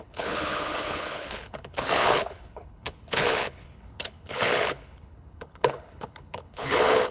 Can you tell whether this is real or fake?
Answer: fake